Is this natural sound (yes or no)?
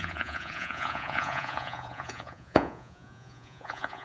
no